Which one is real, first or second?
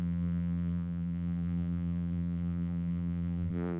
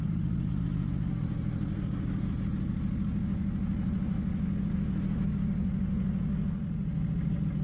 second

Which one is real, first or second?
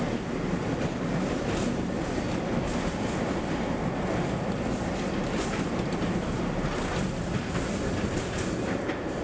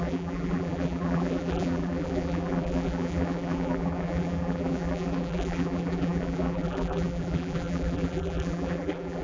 first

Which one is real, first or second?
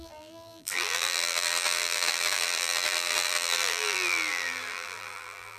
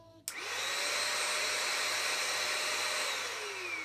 second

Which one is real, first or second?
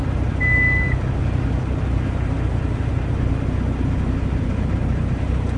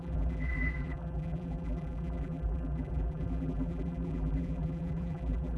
first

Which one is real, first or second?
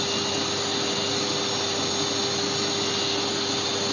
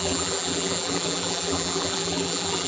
first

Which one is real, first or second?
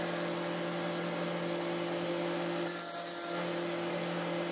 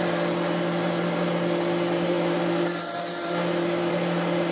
first